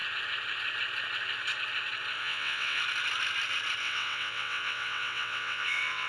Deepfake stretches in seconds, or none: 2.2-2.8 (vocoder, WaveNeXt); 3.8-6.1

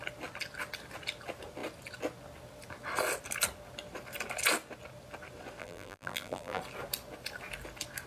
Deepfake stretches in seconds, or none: 5.6-6.6 (vocoder, BigVGAN v2)

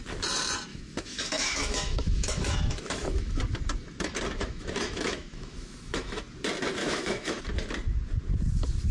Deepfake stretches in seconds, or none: 0.7-3.4 (autoencoder, DAC-VAE); 4.4-6.2; 6.8-7.4

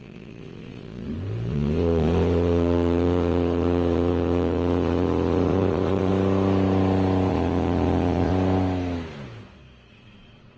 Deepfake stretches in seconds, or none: 0.0-6.1 (vocoder, Vocos); 7.3-8.3; 9.9-10.6

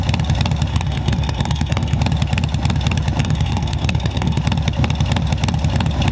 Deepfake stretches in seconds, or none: 0.7-2.0 (codec, SNAC); 3.2-4.4